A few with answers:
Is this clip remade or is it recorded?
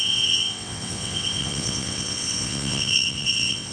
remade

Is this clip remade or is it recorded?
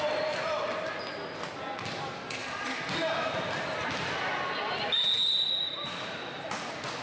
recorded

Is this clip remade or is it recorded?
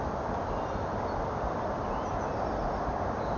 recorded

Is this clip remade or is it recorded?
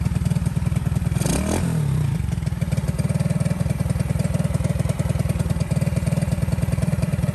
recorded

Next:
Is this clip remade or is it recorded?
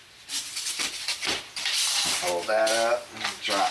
recorded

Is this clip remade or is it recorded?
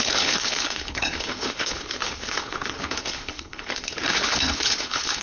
remade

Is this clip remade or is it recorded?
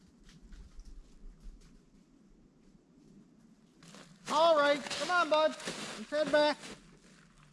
recorded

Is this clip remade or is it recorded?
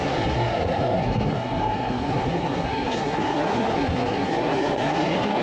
remade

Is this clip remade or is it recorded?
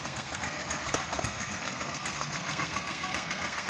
remade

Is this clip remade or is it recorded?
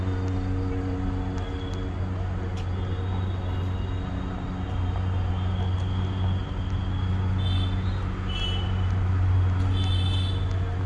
recorded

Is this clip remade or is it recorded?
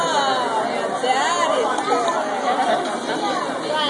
recorded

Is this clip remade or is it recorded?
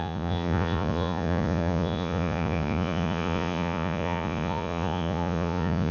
remade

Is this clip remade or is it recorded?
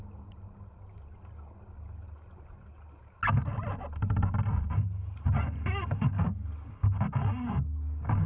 recorded